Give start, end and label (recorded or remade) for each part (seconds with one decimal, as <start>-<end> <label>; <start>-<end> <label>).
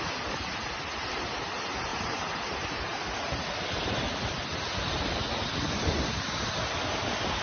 0.0-7.4 recorded